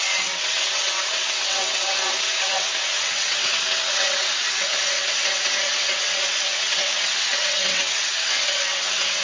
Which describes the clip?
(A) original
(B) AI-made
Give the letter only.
B